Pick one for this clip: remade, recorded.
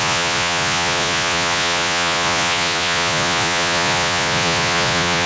remade